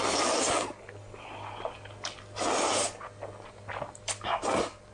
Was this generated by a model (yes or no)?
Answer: no